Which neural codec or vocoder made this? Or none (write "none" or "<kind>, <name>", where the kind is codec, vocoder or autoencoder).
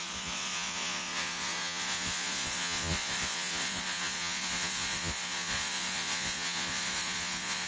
vocoder, Vocos